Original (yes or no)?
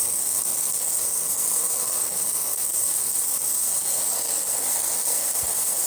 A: no